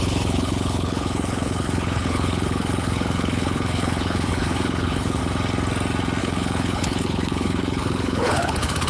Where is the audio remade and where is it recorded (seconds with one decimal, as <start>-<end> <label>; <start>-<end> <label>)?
0.0-5.2 remade; 5.2-6.2 recorded; 6.2-8.9 remade